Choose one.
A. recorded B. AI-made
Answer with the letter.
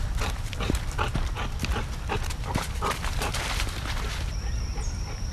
B